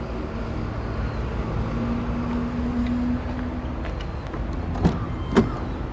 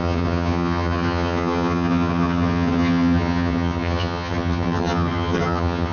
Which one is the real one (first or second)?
first